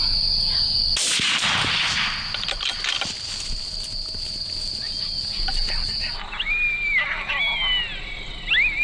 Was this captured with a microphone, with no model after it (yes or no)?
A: yes